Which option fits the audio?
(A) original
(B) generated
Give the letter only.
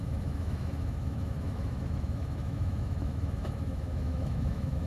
B